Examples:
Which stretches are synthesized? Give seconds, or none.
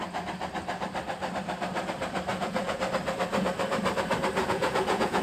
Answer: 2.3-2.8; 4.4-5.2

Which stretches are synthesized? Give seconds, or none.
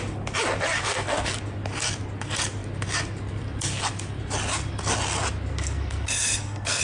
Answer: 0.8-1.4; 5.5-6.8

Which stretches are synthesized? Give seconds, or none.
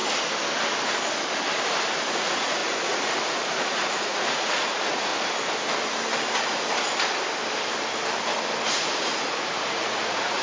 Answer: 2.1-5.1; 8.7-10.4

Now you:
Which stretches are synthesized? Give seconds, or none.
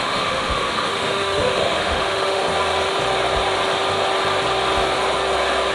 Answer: 0.0-2.4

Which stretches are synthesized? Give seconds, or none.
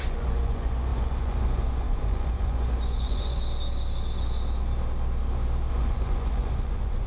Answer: 0.0-3.4; 5.7-7.1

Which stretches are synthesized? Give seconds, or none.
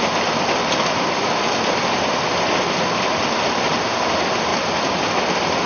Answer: none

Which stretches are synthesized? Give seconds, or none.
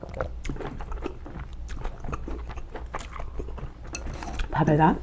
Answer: none